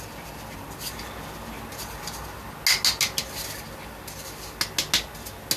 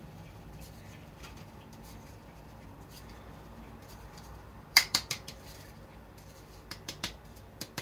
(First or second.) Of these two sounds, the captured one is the first